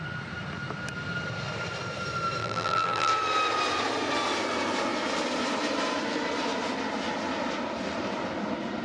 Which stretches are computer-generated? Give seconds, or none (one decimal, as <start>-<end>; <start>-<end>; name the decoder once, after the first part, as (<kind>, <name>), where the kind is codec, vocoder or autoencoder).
2.4-3.1 (vocoder, BigVGAN v2)